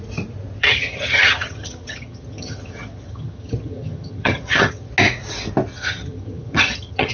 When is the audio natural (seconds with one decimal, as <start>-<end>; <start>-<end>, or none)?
0.0-0.6; 4.9-5.7